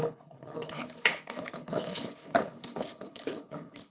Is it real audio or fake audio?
fake